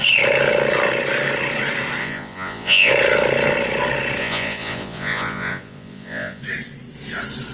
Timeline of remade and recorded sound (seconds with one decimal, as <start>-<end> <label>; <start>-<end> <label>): 0.0-2.0 recorded; 2.0-2.9 remade; 2.9-4.2 recorded; 4.2-6.4 remade; 6.4-7.5 recorded